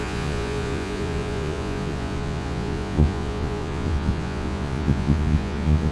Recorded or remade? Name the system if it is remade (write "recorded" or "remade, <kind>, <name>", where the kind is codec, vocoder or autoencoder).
remade, vocoder, Vocos